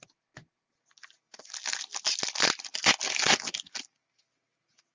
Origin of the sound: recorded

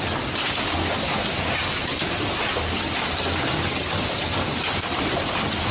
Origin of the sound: recorded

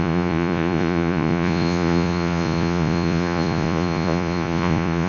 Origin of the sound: remade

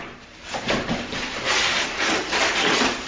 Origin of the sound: recorded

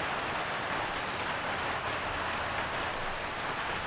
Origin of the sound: recorded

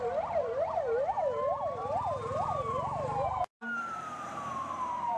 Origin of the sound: remade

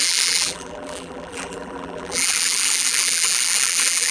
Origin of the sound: remade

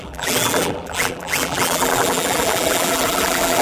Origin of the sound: remade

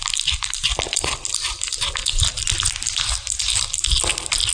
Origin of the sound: recorded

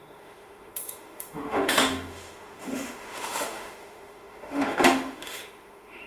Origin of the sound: remade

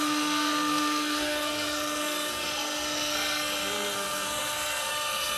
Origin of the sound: remade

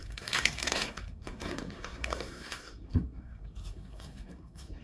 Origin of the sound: remade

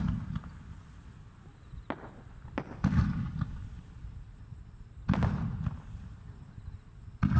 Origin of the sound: recorded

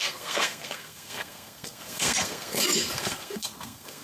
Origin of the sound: remade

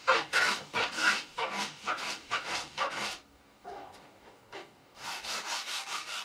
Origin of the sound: remade